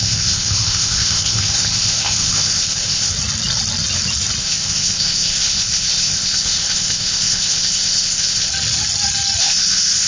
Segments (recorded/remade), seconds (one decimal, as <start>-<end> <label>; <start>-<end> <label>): 0.0-3.1 remade; 3.1-4.4 recorded; 4.4-8.5 remade; 8.5-9.4 recorded; 9.4-10.1 remade